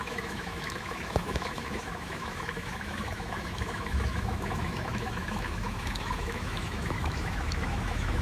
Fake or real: fake